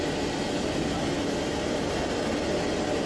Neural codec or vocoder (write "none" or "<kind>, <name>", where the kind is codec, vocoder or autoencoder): none